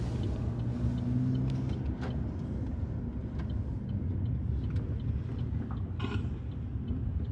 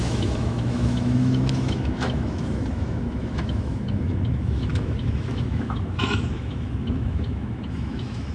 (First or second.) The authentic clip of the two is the first